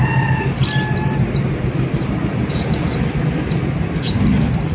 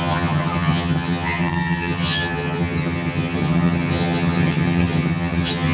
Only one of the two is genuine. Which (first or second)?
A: first